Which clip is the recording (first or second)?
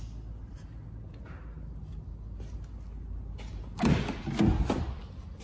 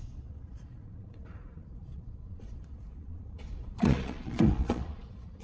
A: first